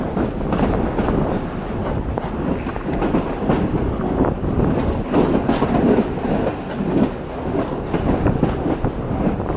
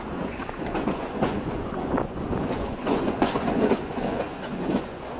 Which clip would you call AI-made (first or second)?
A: second